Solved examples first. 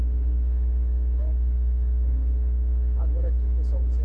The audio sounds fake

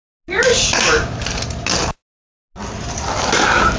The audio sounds real